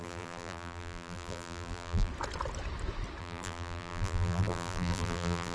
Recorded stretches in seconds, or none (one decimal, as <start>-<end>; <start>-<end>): 2.1-3.2